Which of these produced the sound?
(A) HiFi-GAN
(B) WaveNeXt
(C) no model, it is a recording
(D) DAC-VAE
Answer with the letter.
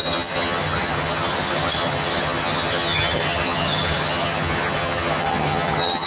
A